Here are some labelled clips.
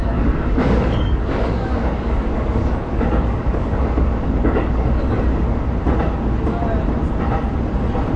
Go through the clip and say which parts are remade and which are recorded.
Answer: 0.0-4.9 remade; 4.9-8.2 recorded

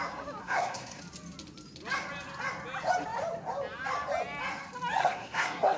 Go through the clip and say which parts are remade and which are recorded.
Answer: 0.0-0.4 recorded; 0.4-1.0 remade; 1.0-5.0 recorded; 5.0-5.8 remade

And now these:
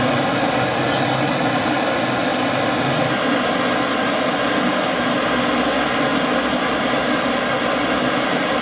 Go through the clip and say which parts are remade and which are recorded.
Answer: 0.0-8.6 recorded

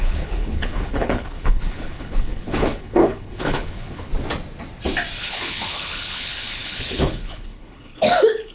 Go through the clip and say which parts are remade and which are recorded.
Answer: 0.0-4.1 remade; 4.1-5.2 recorded; 5.2-8.5 remade

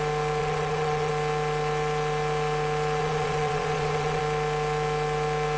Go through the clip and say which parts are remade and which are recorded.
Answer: 0.0-0.4 recorded; 0.4-1.1 remade; 1.1-3.0 recorded; 3.0-4.2 remade; 4.2-5.6 recorded

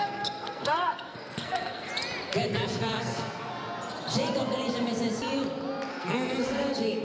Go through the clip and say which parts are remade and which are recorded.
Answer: 0.0-1.9 remade; 1.9-2.5 recorded; 2.5-3.5 remade; 3.5-5.9 recorded; 5.9-7.0 remade